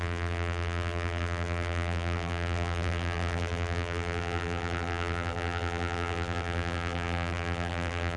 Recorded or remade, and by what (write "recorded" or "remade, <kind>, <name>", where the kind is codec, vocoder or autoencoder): remade, vocoder, BigVGAN v2